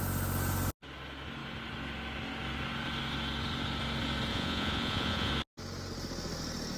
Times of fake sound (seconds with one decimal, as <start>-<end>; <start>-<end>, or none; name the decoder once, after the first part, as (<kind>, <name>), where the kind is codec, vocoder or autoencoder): 4.3-5.3 (vocoder, Vocos)